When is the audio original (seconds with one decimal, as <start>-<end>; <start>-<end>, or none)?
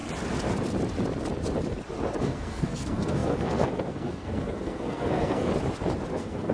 0.0-2.2; 5.5-6.1